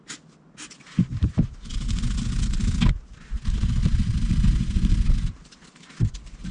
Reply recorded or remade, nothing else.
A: recorded